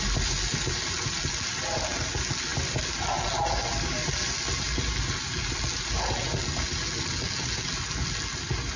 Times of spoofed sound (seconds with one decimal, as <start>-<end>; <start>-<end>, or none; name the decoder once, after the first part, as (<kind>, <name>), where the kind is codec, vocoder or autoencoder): none